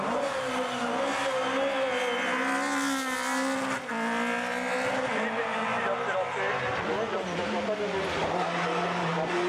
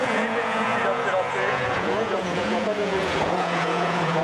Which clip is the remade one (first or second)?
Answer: second